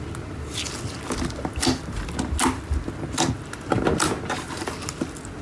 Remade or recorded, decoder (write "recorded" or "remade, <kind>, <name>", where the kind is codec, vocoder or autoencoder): recorded